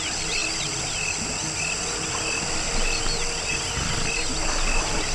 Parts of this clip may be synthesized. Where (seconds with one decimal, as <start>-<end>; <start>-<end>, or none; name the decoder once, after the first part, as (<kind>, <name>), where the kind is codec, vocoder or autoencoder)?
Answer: none